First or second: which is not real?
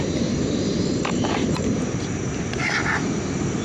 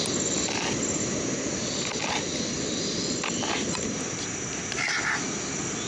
first